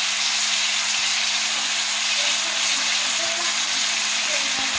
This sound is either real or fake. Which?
real